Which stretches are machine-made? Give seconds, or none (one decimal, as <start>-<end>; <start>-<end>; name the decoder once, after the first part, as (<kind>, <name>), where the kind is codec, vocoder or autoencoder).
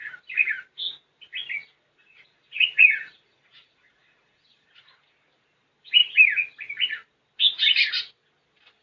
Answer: 2.0-4.9 (vocoder, Vocos)